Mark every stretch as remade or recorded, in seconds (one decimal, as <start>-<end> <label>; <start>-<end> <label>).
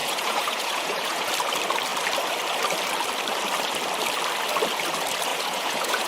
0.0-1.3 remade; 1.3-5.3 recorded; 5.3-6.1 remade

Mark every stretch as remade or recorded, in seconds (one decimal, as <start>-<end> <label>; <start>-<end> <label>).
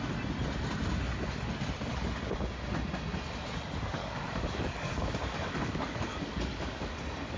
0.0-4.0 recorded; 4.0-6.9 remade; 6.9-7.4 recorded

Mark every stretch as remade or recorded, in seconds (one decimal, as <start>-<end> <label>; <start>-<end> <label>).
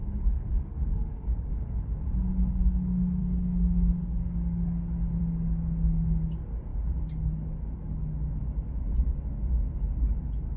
0.0-1.5 remade; 1.5-3.2 recorded; 3.2-5.2 remade; 5.2-10.6 recorded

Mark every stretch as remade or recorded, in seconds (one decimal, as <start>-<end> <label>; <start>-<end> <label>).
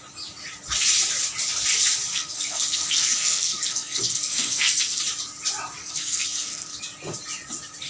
0.0-2.1 recorded; 2.1-5.0 remade; 5.0-5.8 recorded; 5.8-6.8 remade; 6.8-7.9 recorded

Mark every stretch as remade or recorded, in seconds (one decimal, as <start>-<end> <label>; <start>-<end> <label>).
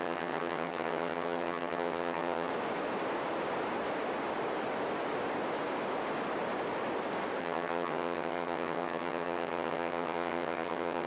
0.0-2.5 remade; 2.5-7.4 recorded; 7.4-11.1 remade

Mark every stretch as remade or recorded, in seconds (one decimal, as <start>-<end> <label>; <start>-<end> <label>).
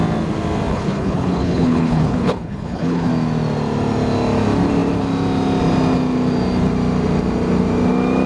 0.0-0.7 recorded; 0.7-3.1 remade; 3.1-8.3 recorded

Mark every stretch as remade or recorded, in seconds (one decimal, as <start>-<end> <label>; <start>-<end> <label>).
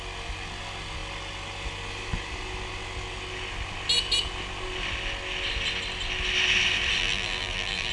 0.0-7.0 recorded; 7.0-7.9 remade